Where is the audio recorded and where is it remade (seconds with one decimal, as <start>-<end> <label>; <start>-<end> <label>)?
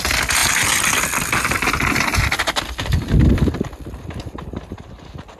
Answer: 0.0-5.4 recorded